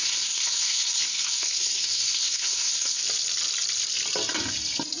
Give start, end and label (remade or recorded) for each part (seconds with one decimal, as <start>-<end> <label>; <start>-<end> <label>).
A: 0.0-3.0 remade; 3.0-5.0 recorded